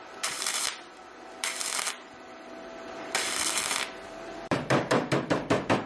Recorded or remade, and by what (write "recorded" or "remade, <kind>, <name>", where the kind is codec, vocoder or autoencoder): remade, vocoder, BigVGAN v2